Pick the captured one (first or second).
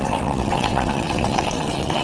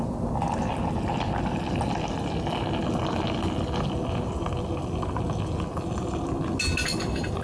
second